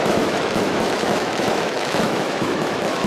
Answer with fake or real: fake